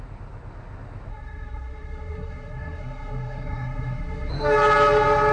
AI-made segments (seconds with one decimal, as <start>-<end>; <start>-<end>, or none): 1.1-4.3